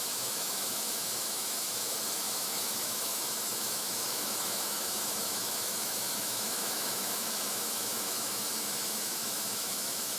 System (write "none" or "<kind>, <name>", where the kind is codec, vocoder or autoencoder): autoencoder, DAC-VAE